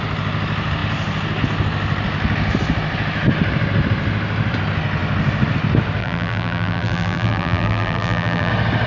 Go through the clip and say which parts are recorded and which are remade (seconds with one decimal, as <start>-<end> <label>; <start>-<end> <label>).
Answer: 0.0-6.0 recorded; 6.0-8.5 remade; 8.5-8.9 recorded